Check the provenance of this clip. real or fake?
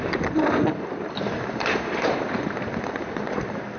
fake